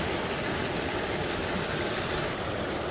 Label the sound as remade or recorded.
recorded